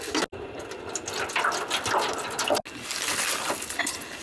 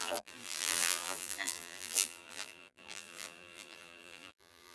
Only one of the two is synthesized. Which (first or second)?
second